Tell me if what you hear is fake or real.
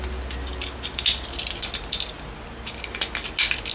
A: real